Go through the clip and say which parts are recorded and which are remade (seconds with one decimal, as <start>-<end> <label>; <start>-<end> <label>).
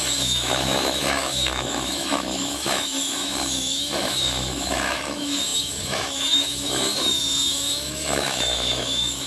0.0-9.3 remade